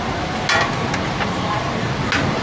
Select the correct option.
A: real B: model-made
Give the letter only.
A